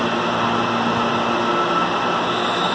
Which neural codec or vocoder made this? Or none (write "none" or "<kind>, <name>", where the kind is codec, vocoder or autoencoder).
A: none